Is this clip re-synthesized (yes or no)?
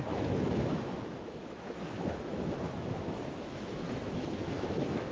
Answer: yes